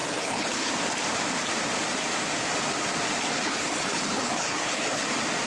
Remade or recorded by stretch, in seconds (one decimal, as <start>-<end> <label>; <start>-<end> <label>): 0.0-0.7 remade; 0.7-3.3 recorded; 3.3-5.0 remade; 5.0-5.5 recorded

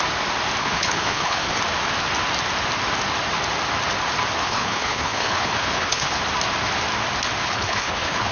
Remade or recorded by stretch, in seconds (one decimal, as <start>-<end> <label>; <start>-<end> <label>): 0.0-0.6 recorded; 0.6-1.6 remade; 1.6-4.4 recorded; 4.4-6.2 remade; 6.2-7.4 recorded; 7.4-8.3 remade

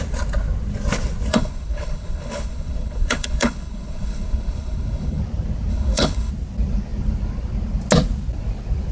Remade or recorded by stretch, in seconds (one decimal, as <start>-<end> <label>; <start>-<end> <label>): 0.0-1.3 recorded; 1.3-5.2 remade; 5.2-5.7 recorded; 5.7-6.3 remade; 6.3-8.9 recorded